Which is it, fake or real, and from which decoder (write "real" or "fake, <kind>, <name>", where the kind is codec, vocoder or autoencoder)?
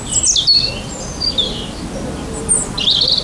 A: real